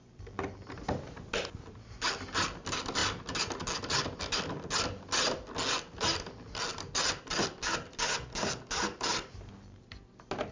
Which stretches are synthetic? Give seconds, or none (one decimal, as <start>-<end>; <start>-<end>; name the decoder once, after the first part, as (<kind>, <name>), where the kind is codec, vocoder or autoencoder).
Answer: 9.1-10.1 (vocoder, BigVGAN v2)